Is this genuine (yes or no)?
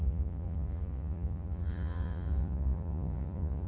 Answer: no